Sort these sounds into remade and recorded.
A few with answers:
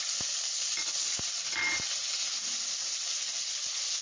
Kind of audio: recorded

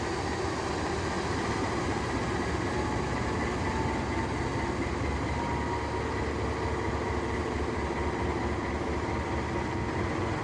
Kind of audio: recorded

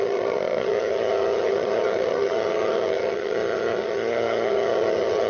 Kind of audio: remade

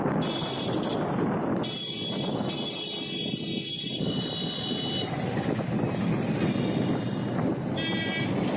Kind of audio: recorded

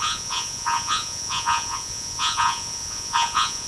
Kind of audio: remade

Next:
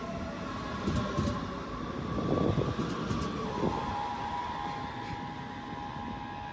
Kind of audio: recorded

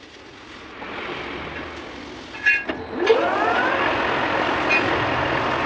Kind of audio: recorded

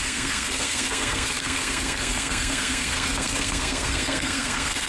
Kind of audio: remade